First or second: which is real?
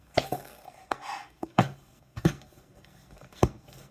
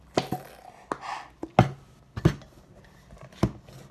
second